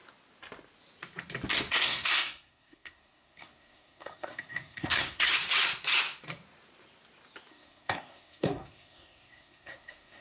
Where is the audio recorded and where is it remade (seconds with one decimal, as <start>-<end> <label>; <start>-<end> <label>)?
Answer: 0.0-1.7 recorded; 1.7-5.3 remade; 5.3-7.5 recorded; 7.5-10.2 remade